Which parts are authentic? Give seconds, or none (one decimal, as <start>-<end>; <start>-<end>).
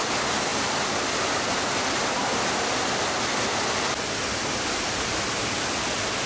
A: 0.0-6.3